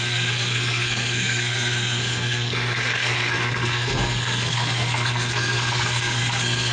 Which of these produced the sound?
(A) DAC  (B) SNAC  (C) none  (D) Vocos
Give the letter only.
B